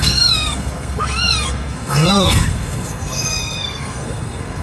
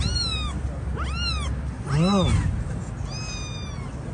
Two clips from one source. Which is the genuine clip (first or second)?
second